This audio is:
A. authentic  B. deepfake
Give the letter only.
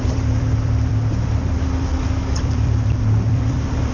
B